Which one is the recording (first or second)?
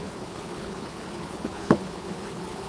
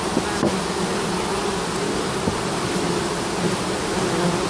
second